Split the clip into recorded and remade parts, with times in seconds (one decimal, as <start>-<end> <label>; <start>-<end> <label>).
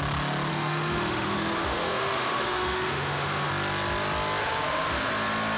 0.0-0.5 recorded; 0.5-3.5 remade; 3.5-4.4 recorded; 4.4-5.1 remade; 5.1-5.6 recorded